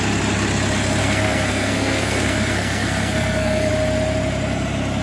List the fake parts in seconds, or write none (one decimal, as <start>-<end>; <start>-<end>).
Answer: 1.0-3.7

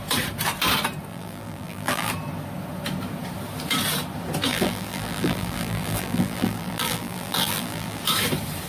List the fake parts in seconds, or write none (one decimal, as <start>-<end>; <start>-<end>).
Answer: 1.1-2.1; 4.5-8.0

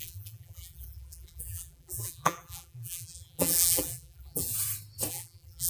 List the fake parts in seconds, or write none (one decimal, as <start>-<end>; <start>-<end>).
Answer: 0.0-4.5; 5.1-5.7

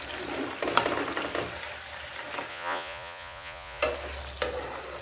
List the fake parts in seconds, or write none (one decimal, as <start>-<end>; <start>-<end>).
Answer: 2.5-3.8

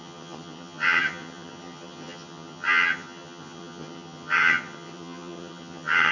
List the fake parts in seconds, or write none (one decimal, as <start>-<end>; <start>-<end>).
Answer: 0.0-6.1

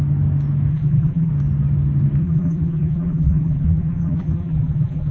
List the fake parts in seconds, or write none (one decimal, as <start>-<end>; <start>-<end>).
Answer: 0.7-1.3; 2.2-5.1

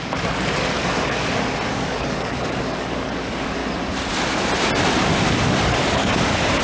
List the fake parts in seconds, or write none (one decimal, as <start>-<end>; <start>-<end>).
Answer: 0.0-1.2; 1.7-3.6; 5.3-6.6

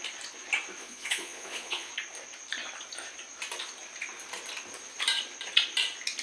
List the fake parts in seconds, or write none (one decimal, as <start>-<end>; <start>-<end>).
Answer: 0.8-1.9